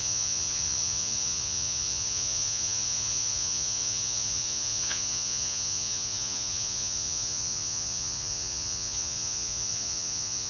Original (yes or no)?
no